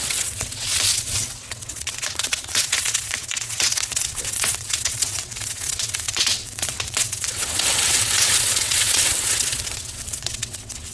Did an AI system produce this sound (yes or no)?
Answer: yes